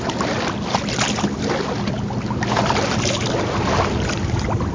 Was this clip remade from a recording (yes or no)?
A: no